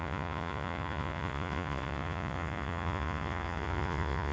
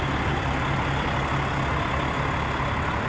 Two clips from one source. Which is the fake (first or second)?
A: first